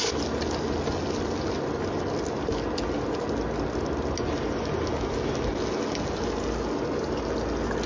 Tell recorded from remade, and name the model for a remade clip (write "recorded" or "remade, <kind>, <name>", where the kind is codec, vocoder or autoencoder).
recorded